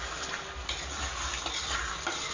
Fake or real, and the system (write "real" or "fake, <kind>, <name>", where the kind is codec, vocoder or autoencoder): real